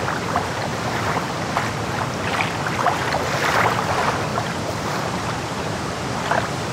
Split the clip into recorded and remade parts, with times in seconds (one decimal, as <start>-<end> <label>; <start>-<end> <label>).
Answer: 0.0-0.7 recorded; 0.7-1.5 remade; 1.5-4.3 recorded; 4.3-5.8 remade; 5.8-6.7 recorded